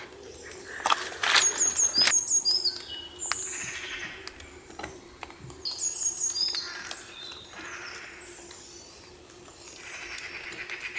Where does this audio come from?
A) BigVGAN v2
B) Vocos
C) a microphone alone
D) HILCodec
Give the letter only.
C